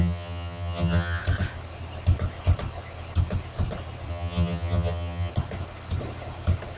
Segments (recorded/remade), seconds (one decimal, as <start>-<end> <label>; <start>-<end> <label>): 0.0-1.2 remade; 1.2-4.1 recorded; 4.1-5.3 remade; 5.3-6.8 recorded